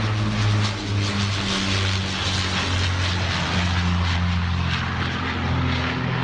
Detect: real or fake real